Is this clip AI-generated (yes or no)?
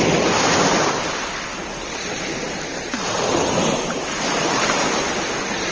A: no